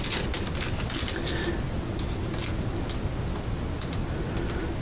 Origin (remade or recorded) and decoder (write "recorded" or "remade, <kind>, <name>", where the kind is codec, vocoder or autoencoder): recorded